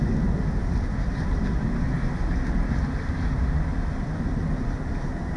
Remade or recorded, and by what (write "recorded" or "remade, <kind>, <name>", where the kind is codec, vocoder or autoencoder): recorded